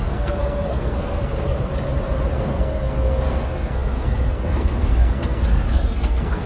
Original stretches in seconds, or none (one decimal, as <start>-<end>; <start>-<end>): 1.7-2.3